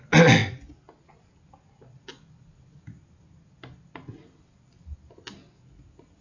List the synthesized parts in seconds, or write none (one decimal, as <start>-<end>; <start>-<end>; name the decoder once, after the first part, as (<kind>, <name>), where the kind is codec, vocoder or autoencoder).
none